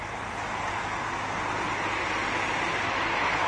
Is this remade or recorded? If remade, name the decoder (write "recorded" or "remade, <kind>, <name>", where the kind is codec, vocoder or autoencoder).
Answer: recorded